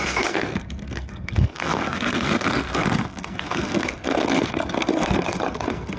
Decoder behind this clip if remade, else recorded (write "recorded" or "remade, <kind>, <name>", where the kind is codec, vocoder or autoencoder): remade, codec, SNAC